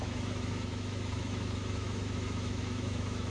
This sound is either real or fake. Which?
fake